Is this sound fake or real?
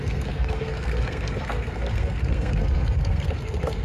fake